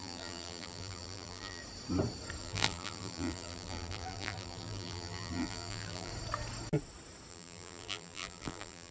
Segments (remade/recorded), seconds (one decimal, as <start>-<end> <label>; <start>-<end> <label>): 0.0-1.6 remade; 1.6-2.4 recorded; 2.4-6.1 remade; 6.1-7.3 recorded; 7.3-8.9 remade